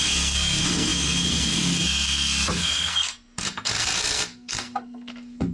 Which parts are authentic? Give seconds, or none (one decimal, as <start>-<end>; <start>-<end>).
none